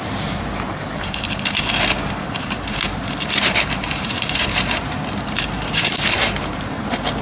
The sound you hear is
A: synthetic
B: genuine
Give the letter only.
A